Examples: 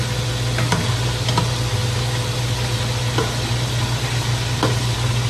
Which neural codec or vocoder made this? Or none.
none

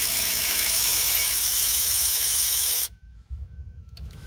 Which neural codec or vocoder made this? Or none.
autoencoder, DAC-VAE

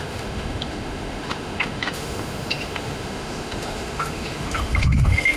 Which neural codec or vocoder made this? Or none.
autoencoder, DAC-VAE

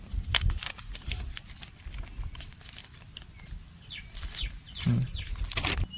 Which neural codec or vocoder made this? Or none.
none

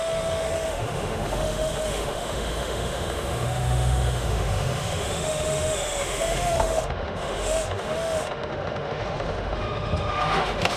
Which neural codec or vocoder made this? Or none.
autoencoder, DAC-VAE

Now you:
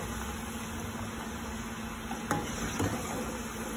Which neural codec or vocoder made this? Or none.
none